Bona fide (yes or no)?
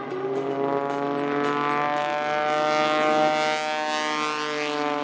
yes